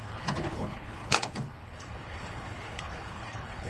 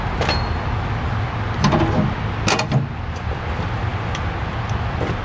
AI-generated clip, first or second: first